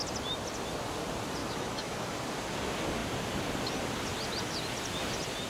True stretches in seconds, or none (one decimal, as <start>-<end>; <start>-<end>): 0.0-1.4; 2.1-5.5